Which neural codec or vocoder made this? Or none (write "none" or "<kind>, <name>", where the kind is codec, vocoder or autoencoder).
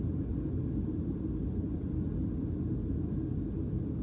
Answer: none